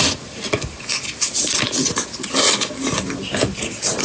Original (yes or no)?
yes